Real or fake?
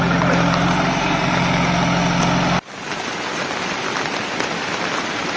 real